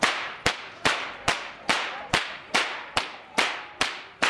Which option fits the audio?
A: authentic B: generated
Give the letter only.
B